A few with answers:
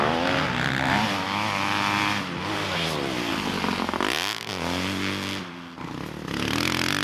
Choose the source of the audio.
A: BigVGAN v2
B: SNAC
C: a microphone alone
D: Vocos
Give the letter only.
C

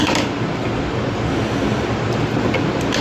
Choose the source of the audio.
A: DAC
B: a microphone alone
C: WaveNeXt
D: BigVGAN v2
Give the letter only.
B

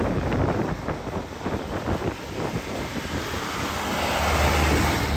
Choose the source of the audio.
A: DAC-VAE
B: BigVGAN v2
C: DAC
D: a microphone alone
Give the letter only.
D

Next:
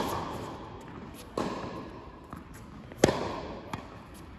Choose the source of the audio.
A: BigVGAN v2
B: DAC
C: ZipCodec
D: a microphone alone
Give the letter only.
D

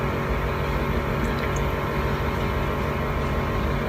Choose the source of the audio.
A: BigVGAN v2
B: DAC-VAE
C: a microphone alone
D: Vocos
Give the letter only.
C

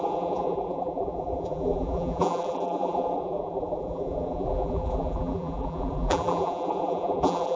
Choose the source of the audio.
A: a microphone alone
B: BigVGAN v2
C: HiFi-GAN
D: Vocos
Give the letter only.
B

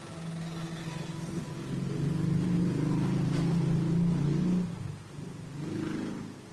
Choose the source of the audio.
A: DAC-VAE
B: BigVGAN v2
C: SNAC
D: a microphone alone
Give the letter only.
D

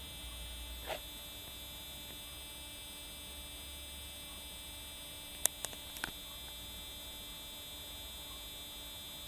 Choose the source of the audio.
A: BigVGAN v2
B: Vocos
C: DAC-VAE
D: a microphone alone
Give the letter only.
D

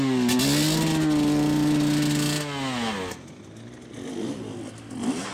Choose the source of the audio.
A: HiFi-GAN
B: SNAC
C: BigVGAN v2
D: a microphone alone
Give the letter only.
D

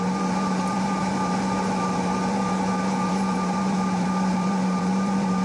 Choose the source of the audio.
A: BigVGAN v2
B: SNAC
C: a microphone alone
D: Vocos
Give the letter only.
A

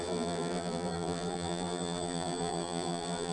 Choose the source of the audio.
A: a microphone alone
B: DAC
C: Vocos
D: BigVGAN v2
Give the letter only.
D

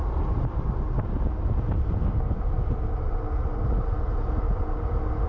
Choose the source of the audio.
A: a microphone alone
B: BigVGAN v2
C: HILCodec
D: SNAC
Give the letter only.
A